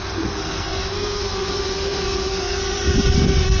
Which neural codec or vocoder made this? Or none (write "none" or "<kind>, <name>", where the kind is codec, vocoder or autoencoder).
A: codec, SNAC